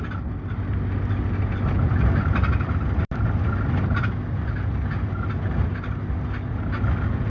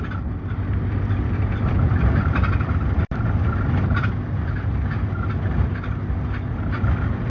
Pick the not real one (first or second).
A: second